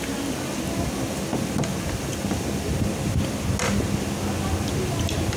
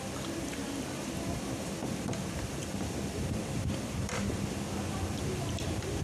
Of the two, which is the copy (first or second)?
second